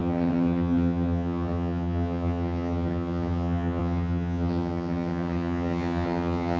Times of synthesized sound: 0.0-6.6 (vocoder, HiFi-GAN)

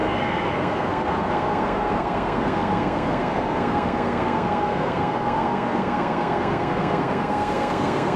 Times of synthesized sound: 0.0-8.2 (codec, SNAC)

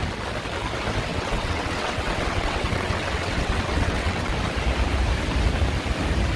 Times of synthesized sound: 1.1-4.3 (vocoder, WaveNeXt)

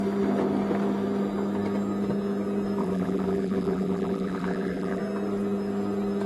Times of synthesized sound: 2.8-5.0 (vocoder, BigVGAN v2)